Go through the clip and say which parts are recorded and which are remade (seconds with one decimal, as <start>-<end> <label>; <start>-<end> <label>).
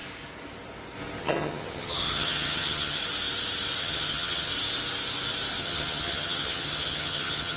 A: 0.0-1.2 recorded; 1.2-3.0 remade; 3.0-3.8 recorded; 3.8-4.5 remade; 4.5-5.6 recorded; 5.6-7.6 remade